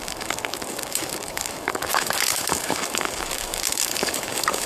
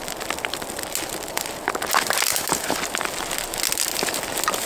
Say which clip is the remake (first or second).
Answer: first